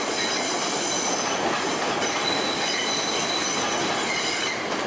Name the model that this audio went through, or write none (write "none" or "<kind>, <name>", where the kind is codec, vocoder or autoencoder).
none